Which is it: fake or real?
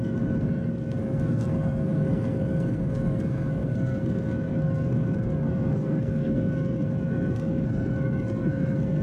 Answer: fake